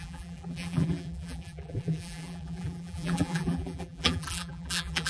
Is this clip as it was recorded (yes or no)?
no